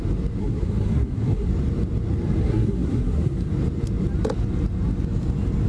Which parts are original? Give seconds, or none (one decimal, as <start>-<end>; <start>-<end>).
0.0-0.4; 1.5-2.4; 3.5-5.7